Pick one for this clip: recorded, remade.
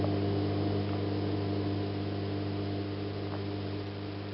recorded